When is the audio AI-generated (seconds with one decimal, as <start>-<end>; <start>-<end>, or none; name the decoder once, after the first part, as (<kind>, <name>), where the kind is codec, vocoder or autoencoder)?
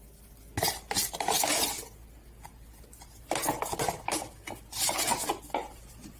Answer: none